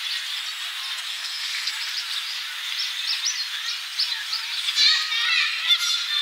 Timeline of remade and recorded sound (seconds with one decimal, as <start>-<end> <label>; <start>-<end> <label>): 0.0-1.1 recorded; 1.1-1.7 remade; 1.7-6.2 recorded